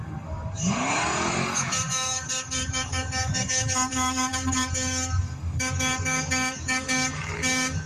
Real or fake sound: fake